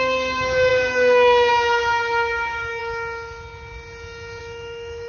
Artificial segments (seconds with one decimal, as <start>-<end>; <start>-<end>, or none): 0.0-2.8; 4.4-5.1